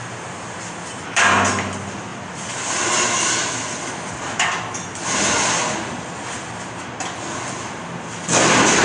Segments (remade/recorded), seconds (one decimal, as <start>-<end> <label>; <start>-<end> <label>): 0.0-8.8 recorded